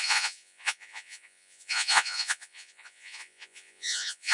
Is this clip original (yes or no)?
no